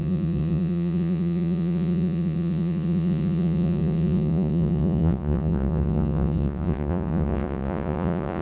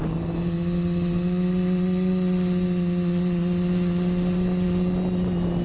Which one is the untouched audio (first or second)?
second